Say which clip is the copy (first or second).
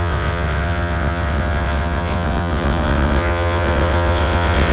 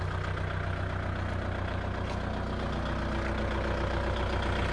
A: first